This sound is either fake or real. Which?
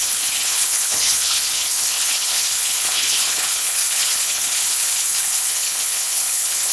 fake